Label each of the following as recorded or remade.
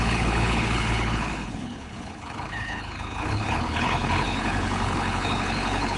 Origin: remade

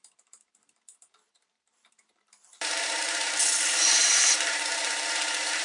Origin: remade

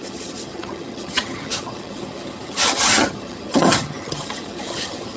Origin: remade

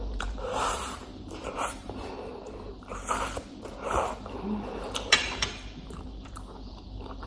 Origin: remade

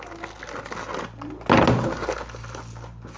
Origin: recorded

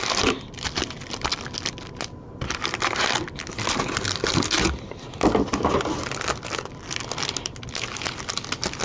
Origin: recorded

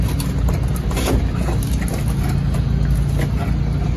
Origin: recorded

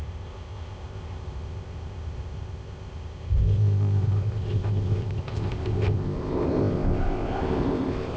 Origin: remade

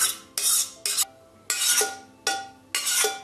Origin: recorded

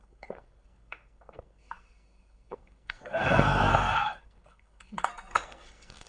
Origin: remade